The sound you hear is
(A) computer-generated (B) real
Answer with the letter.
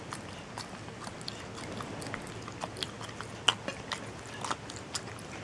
B